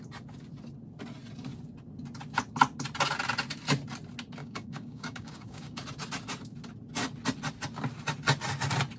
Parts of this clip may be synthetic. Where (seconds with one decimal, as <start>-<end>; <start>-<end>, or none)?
4.4-5.8